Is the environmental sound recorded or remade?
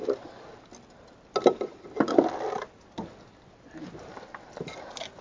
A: recorded